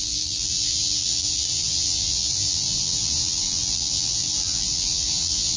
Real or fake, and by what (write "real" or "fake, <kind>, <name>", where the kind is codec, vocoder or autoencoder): fake, vocoder, BigVGAN v2